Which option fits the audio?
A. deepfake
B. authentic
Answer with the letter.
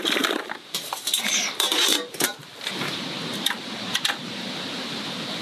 A